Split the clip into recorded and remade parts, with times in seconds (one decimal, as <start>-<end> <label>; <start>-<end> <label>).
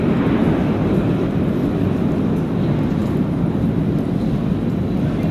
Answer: 0.0-0.4 recorded; 0.4-1.4 remade; 1.4-5.3 recorded